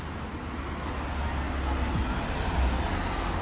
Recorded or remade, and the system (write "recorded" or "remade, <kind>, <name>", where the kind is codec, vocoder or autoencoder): recorded